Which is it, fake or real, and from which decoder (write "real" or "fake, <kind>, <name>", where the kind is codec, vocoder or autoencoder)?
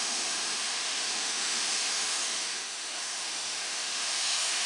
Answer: fake, autoencoder, DAC-VAE